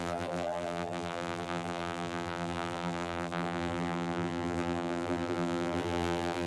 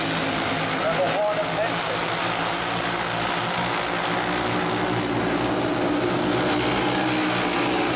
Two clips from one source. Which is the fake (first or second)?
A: first